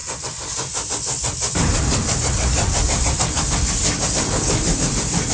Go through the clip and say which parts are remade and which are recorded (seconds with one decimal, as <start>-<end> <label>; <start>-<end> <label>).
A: 0.0-3.2 remade; 3.2-5.3 recorded